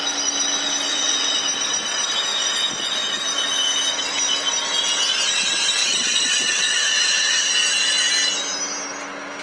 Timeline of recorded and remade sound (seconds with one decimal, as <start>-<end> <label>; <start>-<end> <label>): 0.0-0.9 recorded; 0.9-1.4 remade; 1.4-5.8 recorded; 5.8-7.5 remade; 7.5-9.4 recorded